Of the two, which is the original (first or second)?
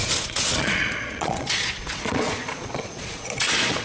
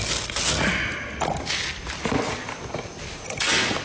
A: second